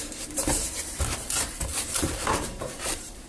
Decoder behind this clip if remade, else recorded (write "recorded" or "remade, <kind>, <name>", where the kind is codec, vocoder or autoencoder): remade, vocoder, BigVGAN v2